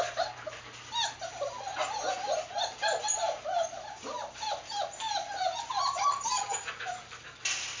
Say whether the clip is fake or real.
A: real